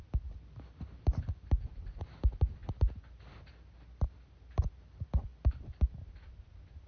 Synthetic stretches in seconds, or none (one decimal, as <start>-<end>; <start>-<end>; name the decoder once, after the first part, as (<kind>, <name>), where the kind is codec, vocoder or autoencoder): none